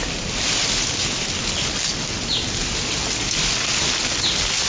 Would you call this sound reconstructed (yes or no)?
no